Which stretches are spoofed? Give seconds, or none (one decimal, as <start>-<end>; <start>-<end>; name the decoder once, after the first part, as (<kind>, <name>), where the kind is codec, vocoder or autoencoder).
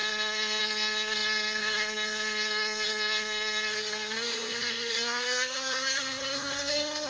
0.0-7.1 (codec, SNAC)